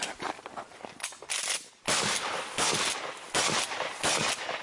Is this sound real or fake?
real